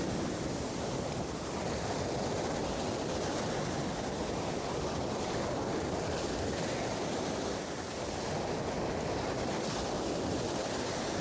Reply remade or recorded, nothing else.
recorded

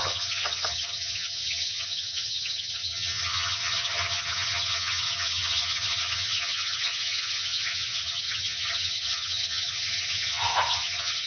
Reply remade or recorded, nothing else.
remade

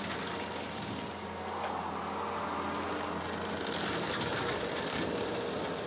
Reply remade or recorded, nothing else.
recorded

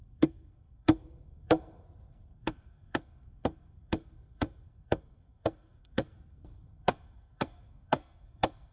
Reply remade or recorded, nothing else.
remade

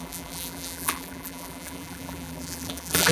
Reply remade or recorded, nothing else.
remade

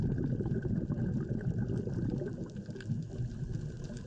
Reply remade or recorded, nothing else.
recorded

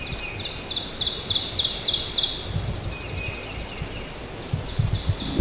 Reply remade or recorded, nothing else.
recorded